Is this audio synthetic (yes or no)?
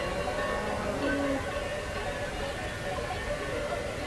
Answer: no